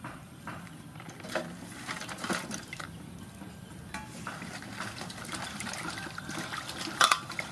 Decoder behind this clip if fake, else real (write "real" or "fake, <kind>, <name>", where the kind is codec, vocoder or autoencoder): fake, vocoder, BigVGAN v2